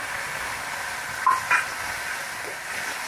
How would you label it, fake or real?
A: real